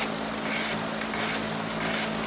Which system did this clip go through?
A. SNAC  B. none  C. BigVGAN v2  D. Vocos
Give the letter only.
B